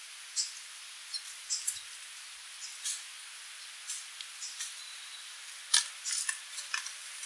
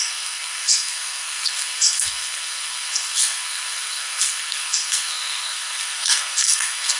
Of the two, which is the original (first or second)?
first